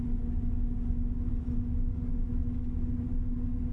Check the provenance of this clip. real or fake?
real